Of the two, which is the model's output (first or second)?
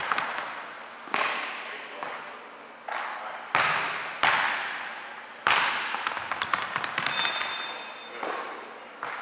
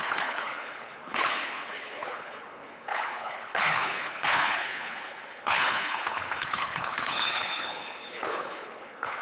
second